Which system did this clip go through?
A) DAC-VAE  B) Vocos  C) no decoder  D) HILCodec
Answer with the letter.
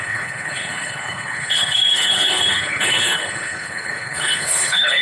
D